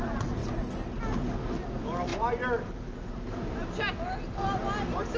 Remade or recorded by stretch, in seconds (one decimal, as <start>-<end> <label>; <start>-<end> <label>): 0.0-5.2 recorded